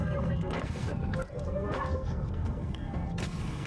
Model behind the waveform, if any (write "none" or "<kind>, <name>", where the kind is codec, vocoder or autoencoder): codec, SNAC